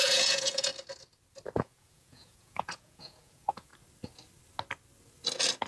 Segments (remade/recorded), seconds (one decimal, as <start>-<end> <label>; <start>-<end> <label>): 0.0-0.7 remade; 0.7-1.6 recorded; 1.6-3.7 remade; 3.7-5.7 recorded